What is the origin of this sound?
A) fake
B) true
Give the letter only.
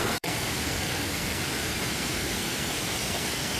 A